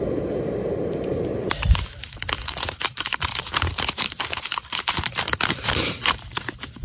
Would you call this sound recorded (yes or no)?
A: no